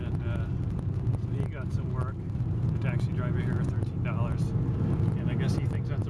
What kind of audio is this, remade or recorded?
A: recorded